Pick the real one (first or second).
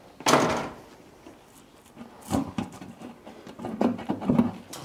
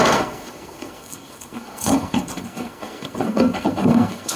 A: first